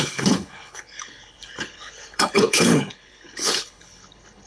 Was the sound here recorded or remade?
remade